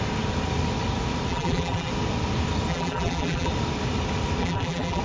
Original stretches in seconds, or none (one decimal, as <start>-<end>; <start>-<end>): 0.0-1.3; 1.9-2.7; 3.5-4.4